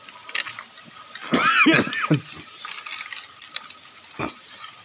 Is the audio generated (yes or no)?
no